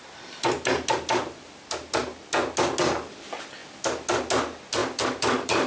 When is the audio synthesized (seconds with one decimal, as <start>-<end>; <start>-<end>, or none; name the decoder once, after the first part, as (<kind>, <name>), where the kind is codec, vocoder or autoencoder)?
4.8-5.7 (vocoder, BigVGAN v2)